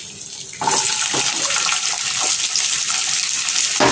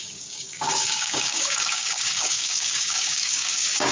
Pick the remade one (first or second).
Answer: second